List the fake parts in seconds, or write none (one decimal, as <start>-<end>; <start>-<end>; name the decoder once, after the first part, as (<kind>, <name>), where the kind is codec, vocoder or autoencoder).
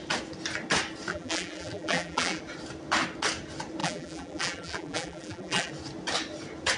1.1-2.4 (vocoder, BigVGAN v2); 3.8-5.7